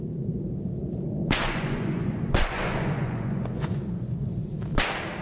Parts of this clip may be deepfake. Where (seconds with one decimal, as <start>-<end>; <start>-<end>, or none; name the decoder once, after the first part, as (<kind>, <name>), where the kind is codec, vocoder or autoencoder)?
1.2-4.3 (vocoder, Vocos)